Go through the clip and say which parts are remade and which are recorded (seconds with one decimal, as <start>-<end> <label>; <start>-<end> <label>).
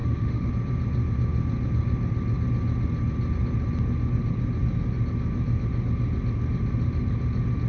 0.0-0.5 remade; 0.5-7.7 recorded